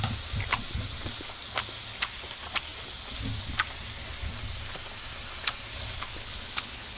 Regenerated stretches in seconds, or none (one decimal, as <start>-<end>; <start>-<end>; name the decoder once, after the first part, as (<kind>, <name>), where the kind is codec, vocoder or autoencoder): 6.1-7.0 (codec, HILCodec)